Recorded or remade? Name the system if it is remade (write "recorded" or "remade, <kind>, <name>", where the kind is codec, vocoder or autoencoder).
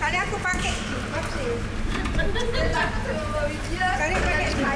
recorded